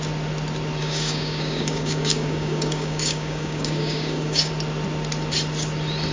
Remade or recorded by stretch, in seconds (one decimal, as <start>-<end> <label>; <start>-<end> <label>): 0.0-0.8 recorded; 0.8-4.5 remade; 4.5-6.1 recorded